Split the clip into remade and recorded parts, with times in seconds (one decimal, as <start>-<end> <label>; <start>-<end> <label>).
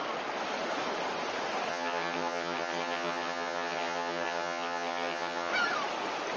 0.0-1.7 recorded; 1.7-5.5 remade; 5.5-6.4 recorded